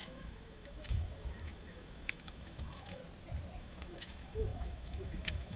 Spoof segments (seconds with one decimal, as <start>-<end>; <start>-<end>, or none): 0.0-3.0; 3.6-5.6